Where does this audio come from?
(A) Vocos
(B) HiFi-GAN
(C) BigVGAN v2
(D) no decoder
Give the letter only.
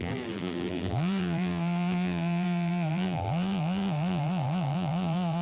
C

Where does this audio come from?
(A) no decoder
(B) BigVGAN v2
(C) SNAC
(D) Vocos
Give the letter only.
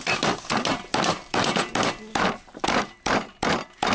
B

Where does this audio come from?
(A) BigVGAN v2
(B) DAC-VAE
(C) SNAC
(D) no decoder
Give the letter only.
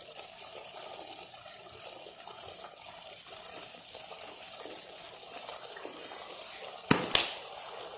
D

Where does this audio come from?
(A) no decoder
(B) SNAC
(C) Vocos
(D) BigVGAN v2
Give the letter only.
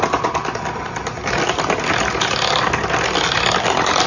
A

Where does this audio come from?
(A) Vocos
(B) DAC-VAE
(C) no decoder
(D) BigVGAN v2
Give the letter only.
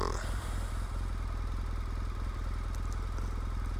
C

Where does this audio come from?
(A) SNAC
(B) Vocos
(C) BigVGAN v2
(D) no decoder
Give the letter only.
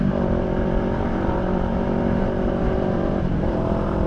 C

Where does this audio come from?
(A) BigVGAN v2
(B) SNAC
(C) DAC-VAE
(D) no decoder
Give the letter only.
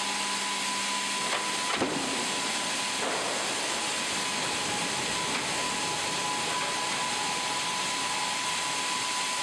D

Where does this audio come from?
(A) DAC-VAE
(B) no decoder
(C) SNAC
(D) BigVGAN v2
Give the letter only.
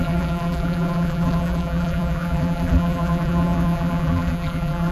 D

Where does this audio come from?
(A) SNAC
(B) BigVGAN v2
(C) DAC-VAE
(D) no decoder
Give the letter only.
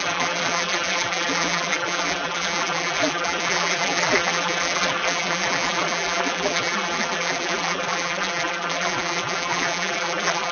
B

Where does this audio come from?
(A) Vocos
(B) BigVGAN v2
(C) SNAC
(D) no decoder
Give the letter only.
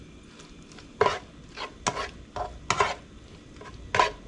D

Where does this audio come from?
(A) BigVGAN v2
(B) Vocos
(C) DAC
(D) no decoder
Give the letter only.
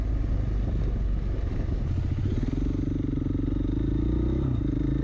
D